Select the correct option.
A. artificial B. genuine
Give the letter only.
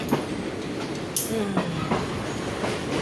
B